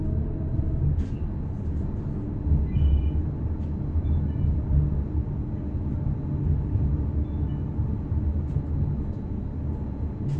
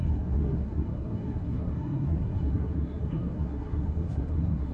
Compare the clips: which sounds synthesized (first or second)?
second